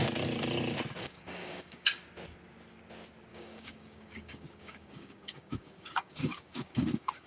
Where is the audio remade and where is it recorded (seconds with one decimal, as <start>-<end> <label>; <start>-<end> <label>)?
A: 0.0-1.0 recorded; 1.0-2.0 remade; 2.0-3.3 recorded; 3.3-7.3 remade